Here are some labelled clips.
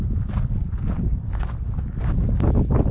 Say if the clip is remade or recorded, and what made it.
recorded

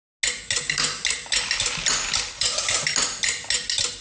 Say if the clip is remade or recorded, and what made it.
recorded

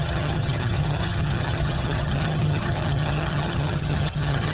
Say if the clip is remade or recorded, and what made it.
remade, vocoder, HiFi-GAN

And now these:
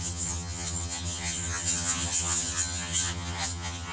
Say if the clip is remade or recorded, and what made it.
remade, vocoder, HiFi-GAN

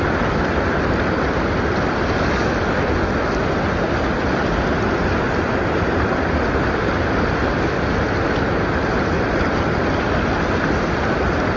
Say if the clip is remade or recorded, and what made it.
recorded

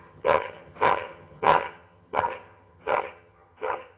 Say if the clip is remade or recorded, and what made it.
remade, vocoder, HiFi-GAN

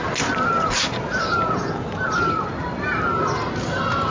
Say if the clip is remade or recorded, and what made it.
recorded